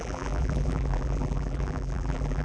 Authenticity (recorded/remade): remade